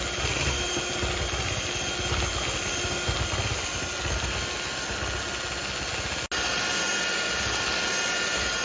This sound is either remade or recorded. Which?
recorded